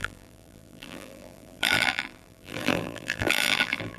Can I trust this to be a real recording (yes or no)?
no